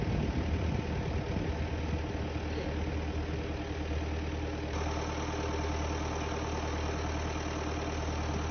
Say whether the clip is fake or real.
real